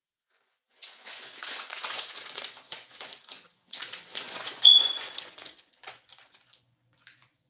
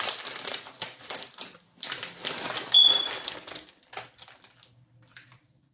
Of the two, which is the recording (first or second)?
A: second